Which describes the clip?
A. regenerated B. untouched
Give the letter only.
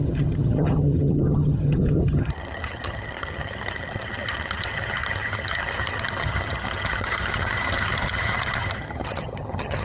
A